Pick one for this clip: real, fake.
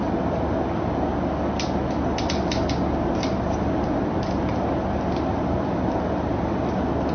real